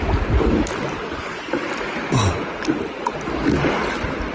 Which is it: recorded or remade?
recorded